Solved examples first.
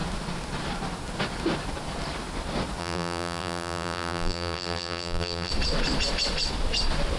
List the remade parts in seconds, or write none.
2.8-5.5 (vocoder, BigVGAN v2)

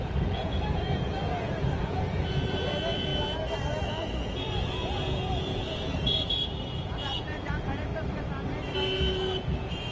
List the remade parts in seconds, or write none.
0.0-3.1 (vocoder, Vocos); 3.8-7.9; 9.1-9.9

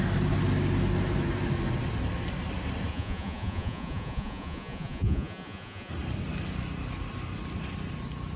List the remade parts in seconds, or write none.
2.9-5.9 (vocoder, Vocos)

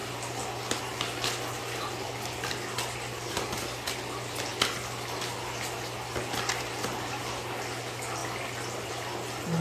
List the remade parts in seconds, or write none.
none